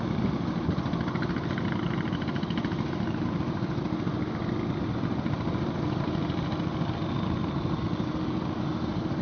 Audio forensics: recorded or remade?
recorded